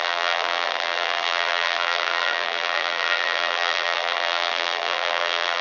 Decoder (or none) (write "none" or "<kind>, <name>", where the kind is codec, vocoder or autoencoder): vocoder, BigVGAN v2